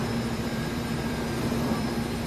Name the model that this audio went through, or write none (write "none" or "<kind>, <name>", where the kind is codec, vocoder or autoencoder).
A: vocoder, BigVGAN v2